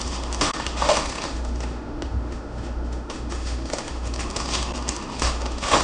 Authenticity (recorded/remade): remade